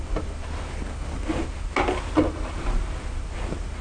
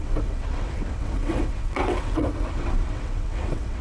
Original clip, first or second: first